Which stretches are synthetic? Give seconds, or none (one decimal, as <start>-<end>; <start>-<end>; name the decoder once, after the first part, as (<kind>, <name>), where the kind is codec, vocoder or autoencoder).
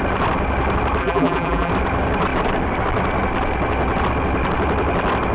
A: 1.0-1.7 (vocoder, BigVGAN v2)